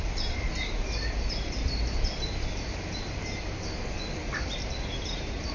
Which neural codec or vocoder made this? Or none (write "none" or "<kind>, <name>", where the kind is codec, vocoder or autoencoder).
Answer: none